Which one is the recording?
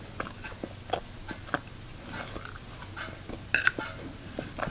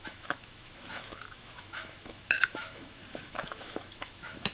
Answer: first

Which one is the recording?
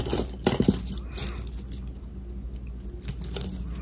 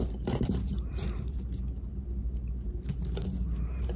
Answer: first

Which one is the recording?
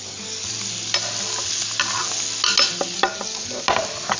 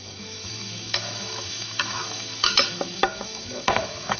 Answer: first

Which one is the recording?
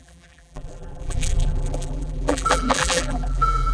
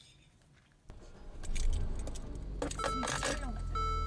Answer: second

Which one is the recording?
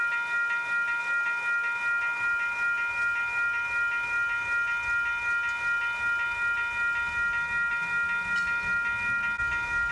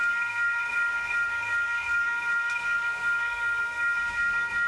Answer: first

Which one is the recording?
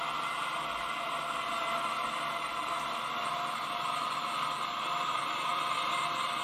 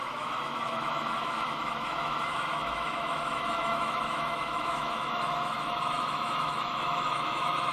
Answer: first